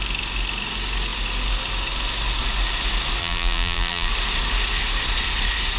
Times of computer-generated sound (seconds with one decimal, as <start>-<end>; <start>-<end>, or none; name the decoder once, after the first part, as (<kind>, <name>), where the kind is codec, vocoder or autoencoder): 3.2-4.1 (vocoder, BigVGAN v2)